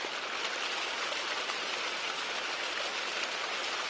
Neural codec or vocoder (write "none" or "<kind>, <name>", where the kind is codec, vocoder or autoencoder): none